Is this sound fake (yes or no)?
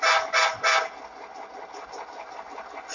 no